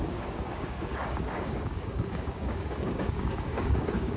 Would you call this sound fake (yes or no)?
yes